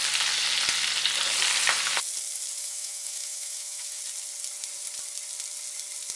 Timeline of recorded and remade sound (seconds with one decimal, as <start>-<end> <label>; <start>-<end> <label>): 0.0-2.6 recorded; 2.6-4.0 remade; 4.0-6.2 recorded